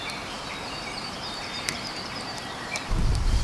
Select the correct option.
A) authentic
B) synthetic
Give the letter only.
B